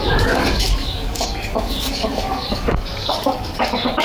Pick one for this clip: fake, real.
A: fake